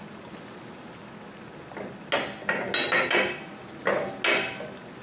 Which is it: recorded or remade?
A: recorded